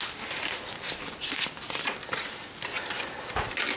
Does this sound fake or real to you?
real